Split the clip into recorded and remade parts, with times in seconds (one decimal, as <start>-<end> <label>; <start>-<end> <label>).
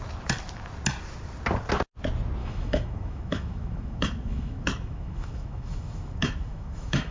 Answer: 0.0-2.4 recorded; 2.4-7.1 remade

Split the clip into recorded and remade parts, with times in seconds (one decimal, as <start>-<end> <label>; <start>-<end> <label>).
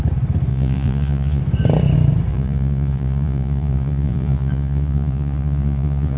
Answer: 0.0-0.5 recorded; 0.5-1.4 remade; 1.4-2.3 recorded; 2.3-6.2 remade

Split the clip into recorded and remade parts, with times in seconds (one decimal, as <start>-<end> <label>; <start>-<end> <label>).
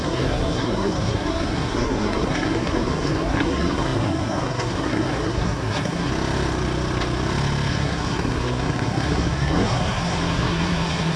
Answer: 0.0-6.1 remade; 6.1-7.7 recorded; 7.7-11.2 remade